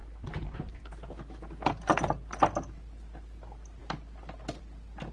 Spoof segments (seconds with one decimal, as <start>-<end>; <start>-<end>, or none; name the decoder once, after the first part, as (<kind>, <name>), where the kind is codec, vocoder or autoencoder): none